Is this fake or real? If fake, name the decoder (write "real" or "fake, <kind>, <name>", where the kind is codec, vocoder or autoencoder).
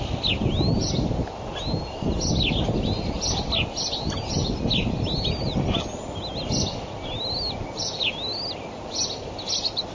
real